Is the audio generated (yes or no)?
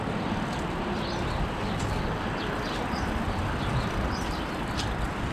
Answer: yes